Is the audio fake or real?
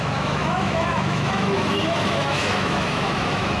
fake